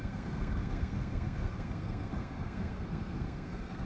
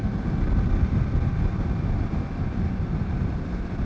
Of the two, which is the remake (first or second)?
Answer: first